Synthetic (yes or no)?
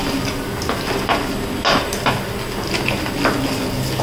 no